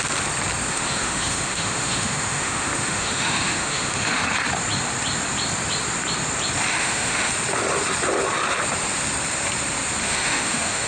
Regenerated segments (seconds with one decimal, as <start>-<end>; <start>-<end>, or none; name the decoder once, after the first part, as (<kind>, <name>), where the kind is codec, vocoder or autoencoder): 0.7-4.2 (autoencoder, DAC-VAE); 6.7-7.3; 10.0-10.9